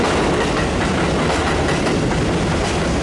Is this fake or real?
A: real